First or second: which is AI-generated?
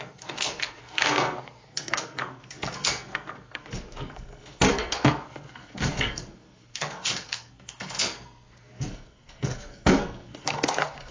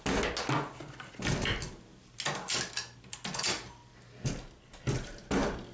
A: first